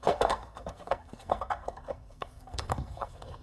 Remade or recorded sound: remade